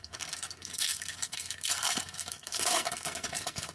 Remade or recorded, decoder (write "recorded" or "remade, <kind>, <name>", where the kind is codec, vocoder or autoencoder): remade, codec, SNAC